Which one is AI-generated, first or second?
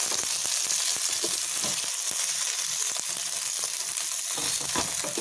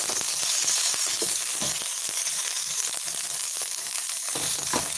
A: second